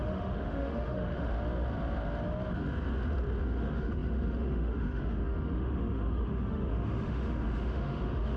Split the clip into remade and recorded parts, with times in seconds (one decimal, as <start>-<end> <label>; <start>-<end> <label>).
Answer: 0.0-1.3 remade; 1.3-3.4 recorded; 3.4-8.4 remade